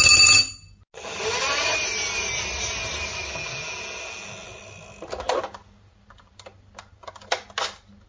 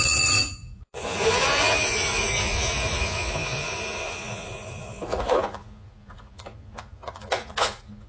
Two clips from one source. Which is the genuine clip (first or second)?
first